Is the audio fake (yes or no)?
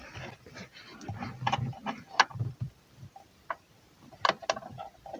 no